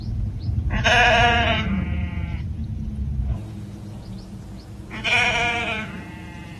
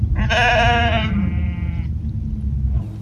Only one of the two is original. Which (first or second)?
second